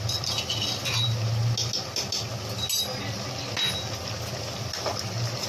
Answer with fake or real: real